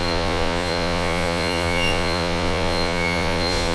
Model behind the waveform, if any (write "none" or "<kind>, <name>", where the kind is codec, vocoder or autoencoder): vocoder, Vocos